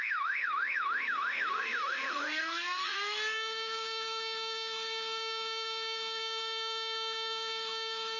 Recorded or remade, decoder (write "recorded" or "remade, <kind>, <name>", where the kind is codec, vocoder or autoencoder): remade, autoencoder, DAC-VAE